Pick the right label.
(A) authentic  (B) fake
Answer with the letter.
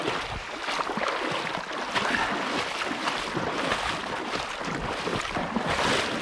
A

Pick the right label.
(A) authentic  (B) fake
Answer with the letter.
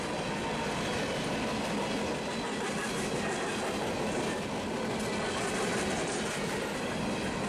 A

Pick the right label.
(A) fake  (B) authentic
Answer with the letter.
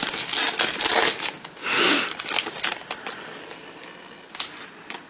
B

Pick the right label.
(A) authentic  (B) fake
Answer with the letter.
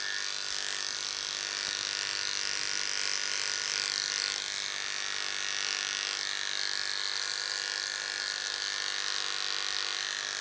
A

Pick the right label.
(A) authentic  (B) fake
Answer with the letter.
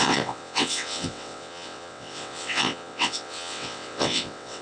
B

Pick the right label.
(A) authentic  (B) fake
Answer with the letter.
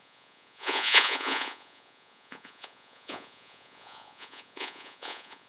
B